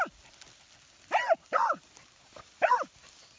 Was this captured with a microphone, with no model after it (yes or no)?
yes